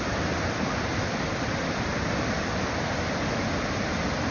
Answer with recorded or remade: recorded